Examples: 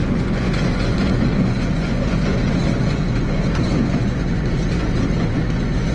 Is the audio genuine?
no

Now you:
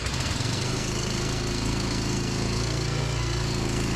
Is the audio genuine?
no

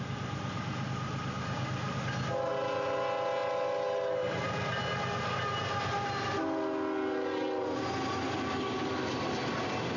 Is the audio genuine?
yes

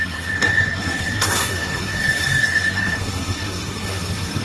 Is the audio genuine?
no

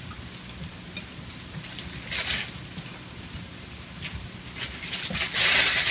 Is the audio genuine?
yes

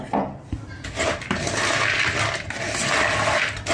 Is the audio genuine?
yes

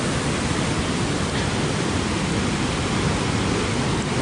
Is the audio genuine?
yes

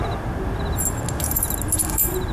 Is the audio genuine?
yes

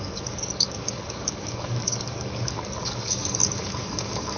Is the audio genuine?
no